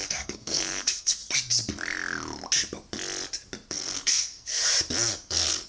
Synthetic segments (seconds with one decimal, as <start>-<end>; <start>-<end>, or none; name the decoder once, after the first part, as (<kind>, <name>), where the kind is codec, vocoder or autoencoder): 0.0-1.2 (codec, SNAC); 3.7-4.6; 5.1-5.7